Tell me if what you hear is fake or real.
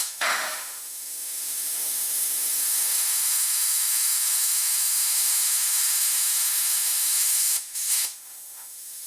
fake